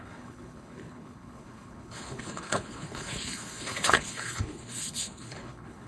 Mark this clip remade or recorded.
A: remade